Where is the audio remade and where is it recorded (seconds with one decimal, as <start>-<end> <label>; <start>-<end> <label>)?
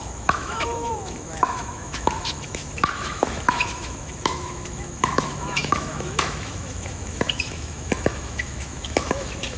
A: 0.0-9.6 remade